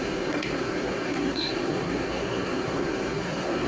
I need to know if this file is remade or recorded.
remade